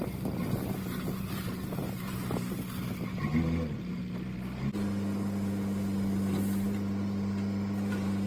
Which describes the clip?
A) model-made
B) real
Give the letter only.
B